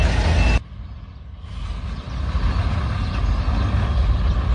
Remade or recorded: recorded